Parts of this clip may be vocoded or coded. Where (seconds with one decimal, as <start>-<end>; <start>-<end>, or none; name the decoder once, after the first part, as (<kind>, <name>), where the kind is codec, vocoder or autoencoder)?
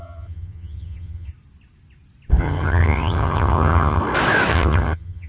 0.0-1.3 (vocoder, HiFi-GAN); 2.4-4.0; 4.5-5.3